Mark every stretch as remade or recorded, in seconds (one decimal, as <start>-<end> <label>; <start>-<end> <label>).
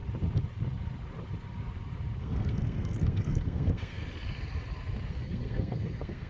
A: 0.0-2.2 recorded; 2.2-4.0 remade; 4.0-5.1 recorded; 5.1-6.3 remade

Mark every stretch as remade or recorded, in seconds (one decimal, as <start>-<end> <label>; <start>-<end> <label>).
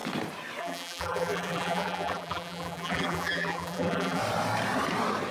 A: 0.0-0.6 recorded; 0.6-4.2 remade; 4.2-5.3 recorded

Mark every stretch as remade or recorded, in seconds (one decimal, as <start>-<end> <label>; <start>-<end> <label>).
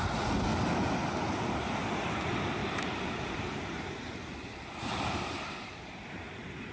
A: 0.0-2.6 recorded; 2.6-4.9 remade; 4.9-6.7 recorded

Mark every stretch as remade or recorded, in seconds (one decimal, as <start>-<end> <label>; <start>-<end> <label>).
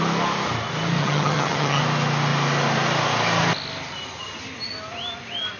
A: 0.0-1.0 recorded; 1.0-1.8 remade; 1.8-5.6 recorded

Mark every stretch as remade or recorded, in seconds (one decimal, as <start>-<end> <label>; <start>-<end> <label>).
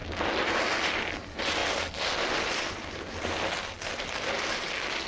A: 0.0-5.1 recorded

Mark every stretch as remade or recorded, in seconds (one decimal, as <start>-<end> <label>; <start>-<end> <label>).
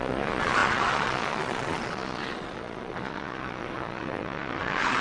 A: 0.0-5.0 remade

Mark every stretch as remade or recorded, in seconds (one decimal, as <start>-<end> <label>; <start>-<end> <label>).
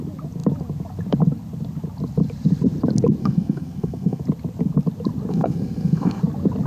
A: 0.0-3.2 recorded; 3.2-4.2 remade; 4.2-5.3 recorded; 5.3-6.2 remade; 6.2-6.7 recorded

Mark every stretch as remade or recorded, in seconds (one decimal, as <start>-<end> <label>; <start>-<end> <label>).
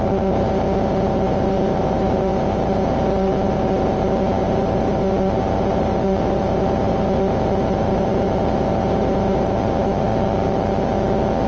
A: 0.0-10.1 remade; 10.1-11.5 recorded